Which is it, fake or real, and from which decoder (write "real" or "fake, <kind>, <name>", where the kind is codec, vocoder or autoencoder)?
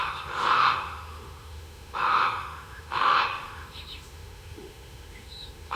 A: fake, autoencoder, DAC-VAE